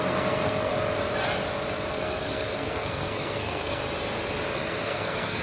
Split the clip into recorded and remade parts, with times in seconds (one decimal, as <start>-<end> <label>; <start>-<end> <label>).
0.0-0.7 remade; 0.7-1.9 recorded; 1.9-3.8 remade; 3.8-4.5 recorded; 4.5-5.4 remade